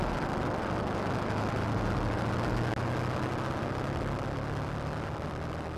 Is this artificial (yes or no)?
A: no